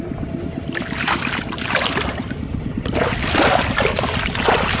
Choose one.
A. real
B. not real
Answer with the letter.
A